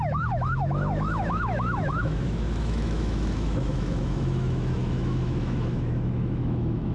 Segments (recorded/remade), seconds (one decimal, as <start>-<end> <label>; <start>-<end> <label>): 0.0-6.9 remade